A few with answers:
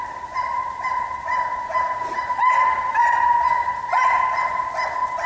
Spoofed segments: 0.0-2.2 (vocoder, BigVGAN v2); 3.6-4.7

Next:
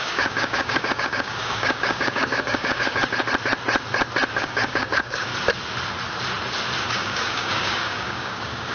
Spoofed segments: 0.0-3.0 (codec, DAC); 4.3-5.3; 6.9-8.7

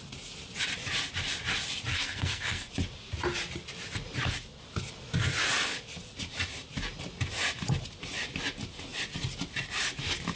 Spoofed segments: 1.9-2.7 (codec, SNAC)

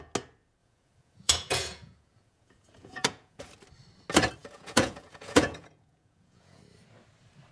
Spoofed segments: 0.6-3.5 (vocoder, Vocos); 4.4-6.6

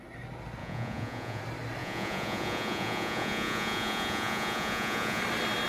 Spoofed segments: 0.6-1.4 (vocoder, Vocos); 1.8-5.2

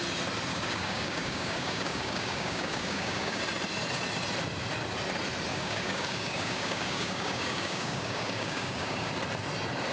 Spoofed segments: 0.5-3.4 (codec, DAC); 5.5-9.1

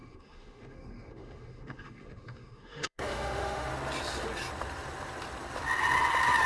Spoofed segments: 0.0-3.7 (autoencoder, DAC-VAE)